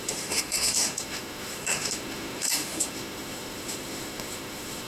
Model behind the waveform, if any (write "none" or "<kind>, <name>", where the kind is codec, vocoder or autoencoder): autoencoder, DAC-VAE